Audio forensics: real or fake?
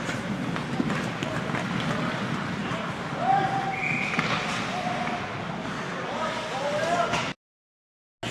real